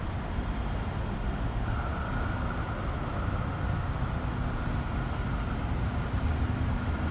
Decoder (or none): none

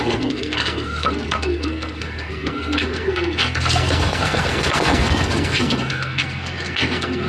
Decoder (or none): codec, SNAC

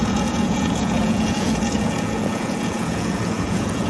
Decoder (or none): vocoder, Vocos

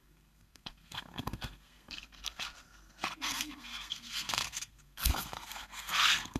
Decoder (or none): codec, SNAC